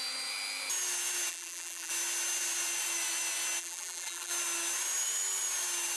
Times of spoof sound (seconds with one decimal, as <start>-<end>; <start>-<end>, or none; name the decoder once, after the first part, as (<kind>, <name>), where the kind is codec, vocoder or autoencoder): 1.3-1.9 (vocoder, BigVGAN v2); 3.6-4.3